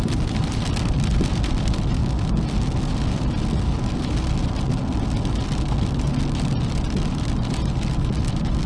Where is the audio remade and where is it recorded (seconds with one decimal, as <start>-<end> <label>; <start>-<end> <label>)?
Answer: 0.0-2.0 remade; 2.0-6.6 recorded; 6.6-8.7 remade